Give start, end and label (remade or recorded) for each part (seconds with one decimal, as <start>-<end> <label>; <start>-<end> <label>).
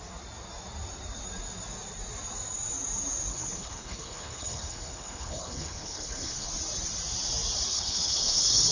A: 0.0-3.3 recorded; 3.3-6.5 remade; 6.5-7.7 recorded; 7.7-8.7 remade